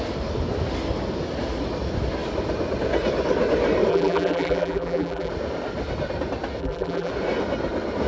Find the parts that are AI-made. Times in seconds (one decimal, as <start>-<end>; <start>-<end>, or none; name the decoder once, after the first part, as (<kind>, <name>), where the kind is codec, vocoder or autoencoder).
3.9-5.3 (vocoder, BigVGAN v2); 6.6-7.1